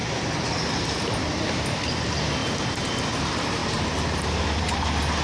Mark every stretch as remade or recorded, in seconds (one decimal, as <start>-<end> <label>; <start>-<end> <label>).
0.0-2.4 remade; 2.4-3.0 recorded; 3.0-3.6 remade; 3.6-4.6 recorded; 4.6-5.2 remade